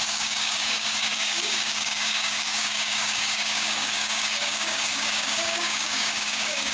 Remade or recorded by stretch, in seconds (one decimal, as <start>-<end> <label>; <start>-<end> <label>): 0.0-6.7 remade